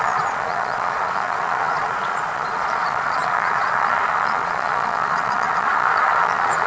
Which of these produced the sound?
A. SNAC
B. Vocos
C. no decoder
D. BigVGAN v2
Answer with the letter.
B